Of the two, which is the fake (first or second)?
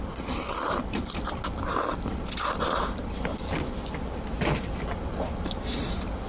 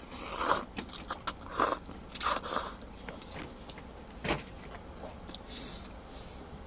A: first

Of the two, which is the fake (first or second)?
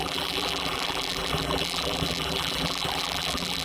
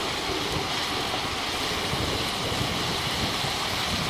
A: first